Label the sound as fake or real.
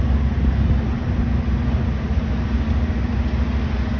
real